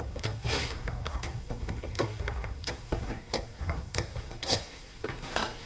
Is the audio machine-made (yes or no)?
yes